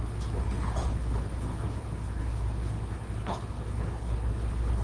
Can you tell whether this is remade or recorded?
remade